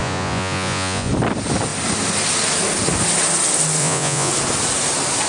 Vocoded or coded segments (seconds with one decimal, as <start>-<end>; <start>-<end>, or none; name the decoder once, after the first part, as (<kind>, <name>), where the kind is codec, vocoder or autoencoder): 0.0-1.1 (vocoder, Vocos); 3.8-4.3